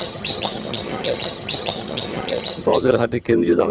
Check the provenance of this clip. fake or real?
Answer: fake